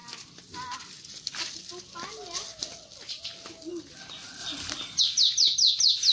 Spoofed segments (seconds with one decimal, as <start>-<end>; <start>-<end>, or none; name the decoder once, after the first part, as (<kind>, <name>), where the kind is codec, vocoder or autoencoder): none